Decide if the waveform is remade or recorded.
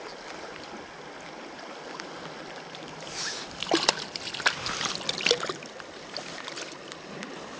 recorded